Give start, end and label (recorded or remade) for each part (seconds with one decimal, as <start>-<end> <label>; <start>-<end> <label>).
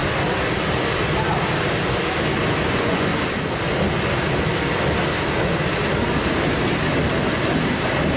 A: 0.0-2.7 recorded; 2.7-3.1 remade; 3.1-8.2 recorded